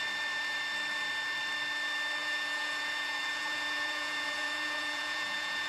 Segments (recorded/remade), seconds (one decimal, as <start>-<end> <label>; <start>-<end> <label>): 0.0-2.2 recorded; 2.2-5.7 remade